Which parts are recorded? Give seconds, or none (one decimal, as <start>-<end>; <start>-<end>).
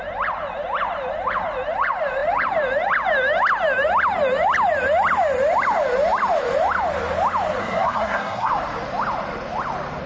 0.0-7.6; 8.5-10.1